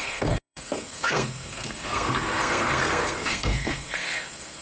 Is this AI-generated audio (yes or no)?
yes